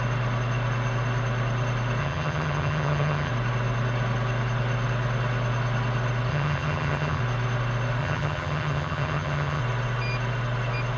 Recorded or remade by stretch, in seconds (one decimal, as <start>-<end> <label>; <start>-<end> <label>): 0.0-2.0 recorded; 2.0-3.3 remade; 3.3-6.3 recorded; 6.3-7.2 remade; 7.2-8.0 recorded; 8.0-9.6 remade; 9.6-11.0 recorded